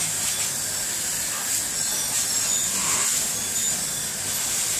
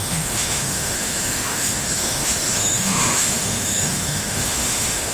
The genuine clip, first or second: first